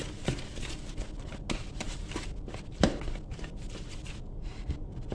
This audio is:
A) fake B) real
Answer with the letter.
B